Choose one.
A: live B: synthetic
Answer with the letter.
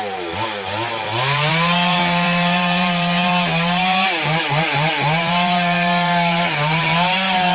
B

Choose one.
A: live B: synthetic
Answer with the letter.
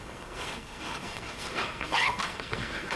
B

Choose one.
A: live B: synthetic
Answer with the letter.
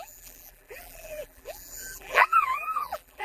B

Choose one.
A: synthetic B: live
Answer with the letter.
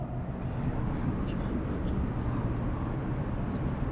B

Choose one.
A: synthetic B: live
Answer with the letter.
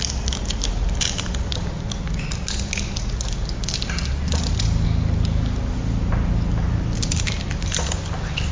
B